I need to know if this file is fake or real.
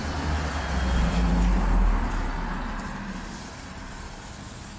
real